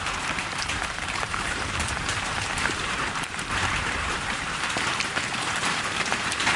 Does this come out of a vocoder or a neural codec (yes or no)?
yes